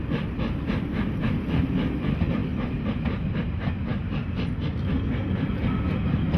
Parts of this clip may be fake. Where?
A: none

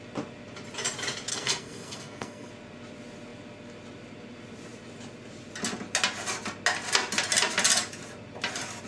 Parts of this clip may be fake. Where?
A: 1.3-2.5